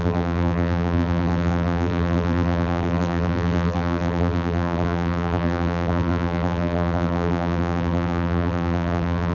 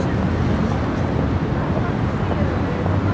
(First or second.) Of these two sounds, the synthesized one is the first